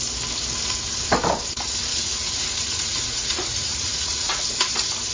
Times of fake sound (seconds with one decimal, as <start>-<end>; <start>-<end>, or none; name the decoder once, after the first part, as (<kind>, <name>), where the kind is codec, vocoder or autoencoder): 1.9-4.4 (vocoder, Vocos)